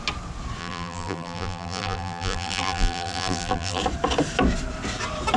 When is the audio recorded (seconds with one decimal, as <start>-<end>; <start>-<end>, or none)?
0.0-0.6; 3.8-5.4